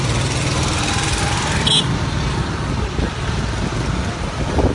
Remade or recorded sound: recorded